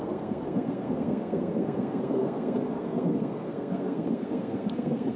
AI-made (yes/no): yes